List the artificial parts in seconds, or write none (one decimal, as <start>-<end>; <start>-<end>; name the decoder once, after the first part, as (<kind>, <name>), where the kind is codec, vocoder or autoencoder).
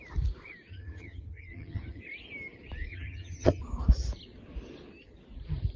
0.7-2.0 (vocoder, HiFi-GAN); 2.9-3.6